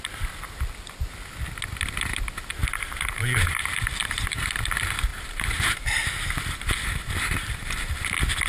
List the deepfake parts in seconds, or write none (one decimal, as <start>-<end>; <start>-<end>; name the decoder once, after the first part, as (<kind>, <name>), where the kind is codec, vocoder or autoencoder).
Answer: 2.6-4.4 (vocoder, BigVGAN v2); 5.1-8.1